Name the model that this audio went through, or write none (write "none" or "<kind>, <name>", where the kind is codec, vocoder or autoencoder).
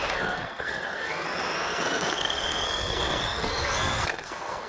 codec, SNAC